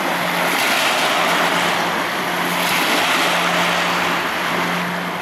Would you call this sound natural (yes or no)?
yes